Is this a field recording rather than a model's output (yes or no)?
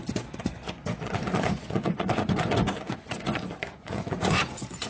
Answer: no